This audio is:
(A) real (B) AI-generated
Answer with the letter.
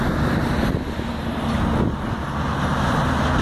A